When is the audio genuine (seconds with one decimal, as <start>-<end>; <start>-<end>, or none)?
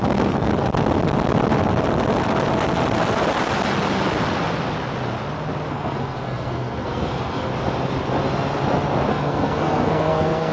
0.5-5.7; 7.5-9.1